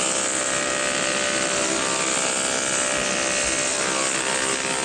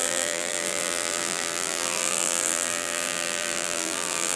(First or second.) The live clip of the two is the first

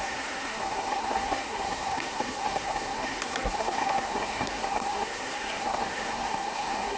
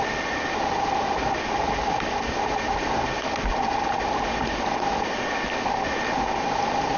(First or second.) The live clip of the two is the second